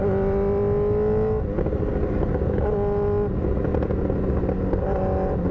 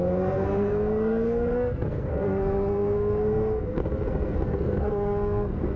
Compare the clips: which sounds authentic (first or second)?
first